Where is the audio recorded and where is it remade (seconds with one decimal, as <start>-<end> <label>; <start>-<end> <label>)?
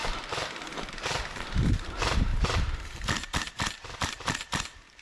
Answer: 0.0-0.9 recorded; 0.9-5.0 remade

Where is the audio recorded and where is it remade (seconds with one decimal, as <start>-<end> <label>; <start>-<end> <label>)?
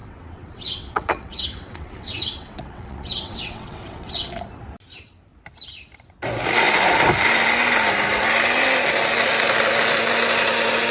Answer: 0.0-4.4 remade; 4.4-10.9 recorded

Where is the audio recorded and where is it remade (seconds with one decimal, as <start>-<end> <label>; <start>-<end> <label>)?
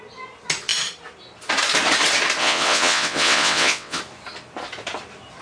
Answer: 0.0-2.4 recorded; 2.4-4.0 remade; 4.0-5.4 recorded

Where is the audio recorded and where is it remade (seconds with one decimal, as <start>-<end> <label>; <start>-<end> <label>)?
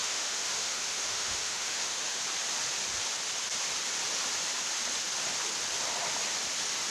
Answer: 0.0-2.2 remade; 2.2-6.9 recorded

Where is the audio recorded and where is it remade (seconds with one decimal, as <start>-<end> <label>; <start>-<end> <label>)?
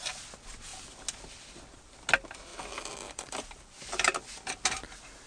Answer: 0.0-2.5 recorded; 2.5-3.8 remade; 3.8-5.3 recorded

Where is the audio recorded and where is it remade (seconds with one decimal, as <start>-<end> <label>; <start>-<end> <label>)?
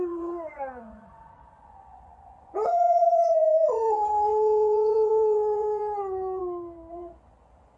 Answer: 0.0-6.4 remade; 6.4-6.9 recorded; 6.9-7.8 remade